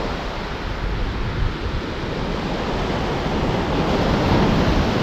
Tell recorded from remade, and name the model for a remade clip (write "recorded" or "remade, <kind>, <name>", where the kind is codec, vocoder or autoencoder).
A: recorded